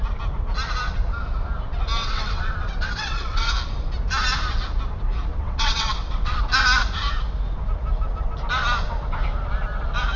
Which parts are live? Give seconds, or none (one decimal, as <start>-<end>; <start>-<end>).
0.0-2.0; 3.5-5.3; 6.4-10.2